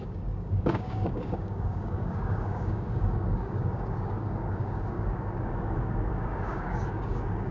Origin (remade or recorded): remade